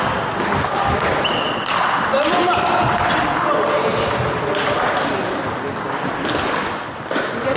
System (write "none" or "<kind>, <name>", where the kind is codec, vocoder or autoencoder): none